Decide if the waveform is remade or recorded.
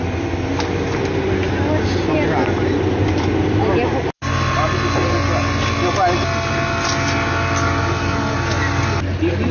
recorded